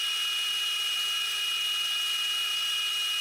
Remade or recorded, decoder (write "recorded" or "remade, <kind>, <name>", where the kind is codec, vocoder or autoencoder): recorded